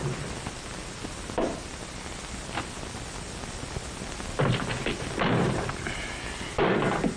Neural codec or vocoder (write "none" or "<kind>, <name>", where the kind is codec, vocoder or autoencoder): none